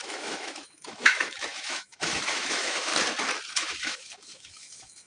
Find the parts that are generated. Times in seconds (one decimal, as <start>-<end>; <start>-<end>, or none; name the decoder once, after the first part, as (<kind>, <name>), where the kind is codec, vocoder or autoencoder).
0.0-2.9 (autoencoder, DAC-VAE); 3.5-5.1